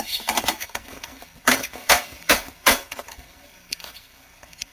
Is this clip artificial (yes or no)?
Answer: yes